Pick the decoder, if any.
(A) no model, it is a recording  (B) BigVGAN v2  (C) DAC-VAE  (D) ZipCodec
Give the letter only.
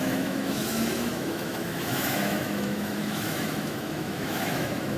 C